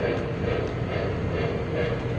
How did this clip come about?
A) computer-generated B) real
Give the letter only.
B